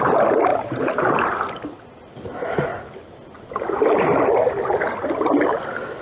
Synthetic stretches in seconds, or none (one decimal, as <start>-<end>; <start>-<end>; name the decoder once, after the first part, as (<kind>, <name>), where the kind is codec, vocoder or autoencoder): 0.5-1.0 (vocoder, BigVGAN v2)